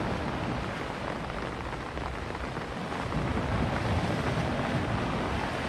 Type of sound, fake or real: real